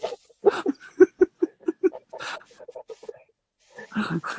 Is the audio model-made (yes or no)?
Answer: no